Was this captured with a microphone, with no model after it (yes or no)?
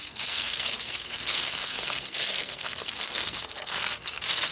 no